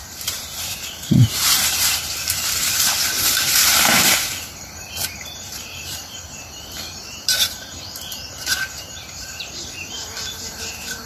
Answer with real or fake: fake